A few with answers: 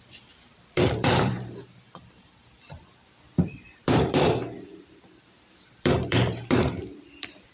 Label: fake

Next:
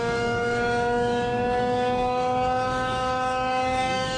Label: fake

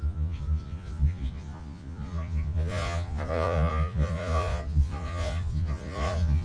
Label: fake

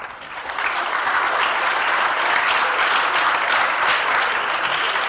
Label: real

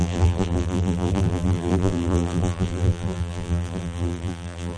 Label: fake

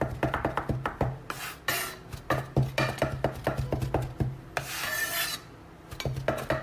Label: real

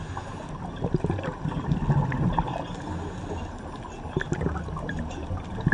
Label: real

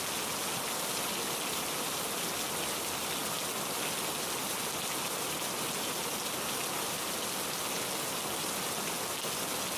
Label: real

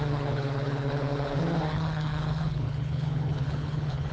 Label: fake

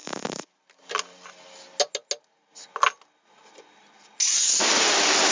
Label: real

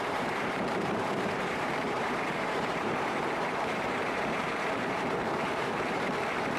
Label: fake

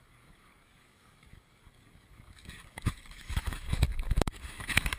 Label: fake